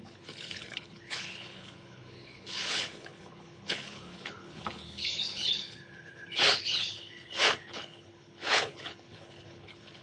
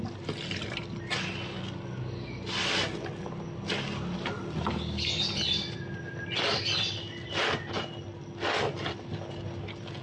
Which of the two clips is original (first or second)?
second